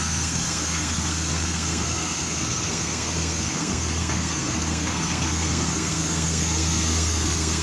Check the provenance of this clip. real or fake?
fake